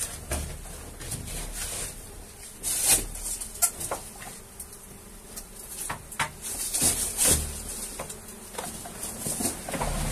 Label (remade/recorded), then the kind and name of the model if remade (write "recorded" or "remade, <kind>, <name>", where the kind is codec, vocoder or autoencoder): recorded